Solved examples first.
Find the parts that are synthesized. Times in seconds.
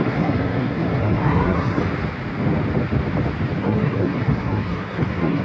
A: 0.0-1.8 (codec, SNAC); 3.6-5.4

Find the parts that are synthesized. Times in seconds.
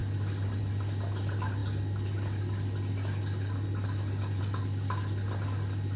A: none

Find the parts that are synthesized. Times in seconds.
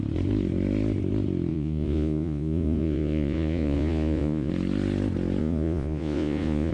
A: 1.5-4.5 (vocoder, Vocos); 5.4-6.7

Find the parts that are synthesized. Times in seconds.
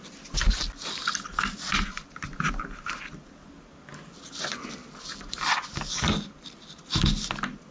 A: none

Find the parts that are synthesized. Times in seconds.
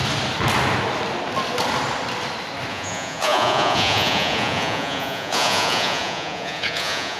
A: 2.7-7.2 (vocoder, Vocos)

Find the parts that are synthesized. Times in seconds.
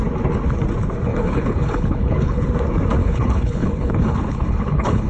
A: 1.1-2.5 (codec, HILCodec); 3.0-5.1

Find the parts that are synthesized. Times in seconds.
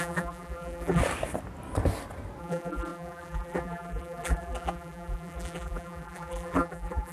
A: 0.0-1.0 (vocoder, BigVGAN v2); 2.4-7.1